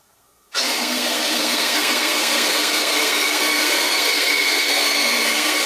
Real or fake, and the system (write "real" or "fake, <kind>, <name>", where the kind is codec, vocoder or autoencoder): fake, codec, SNAC